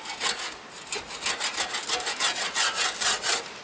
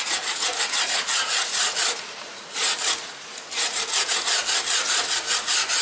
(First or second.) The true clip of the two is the first